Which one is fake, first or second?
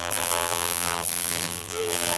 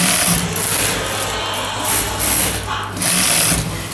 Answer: first